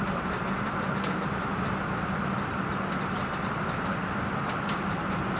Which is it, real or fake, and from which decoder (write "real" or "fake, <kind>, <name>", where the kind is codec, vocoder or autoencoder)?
fake, vocoder, BigVGAN v2